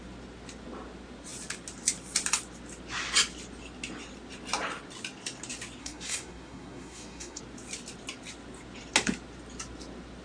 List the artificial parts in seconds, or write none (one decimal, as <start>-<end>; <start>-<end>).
5.8-7.4